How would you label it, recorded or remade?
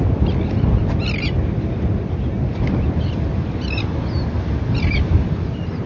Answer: recorded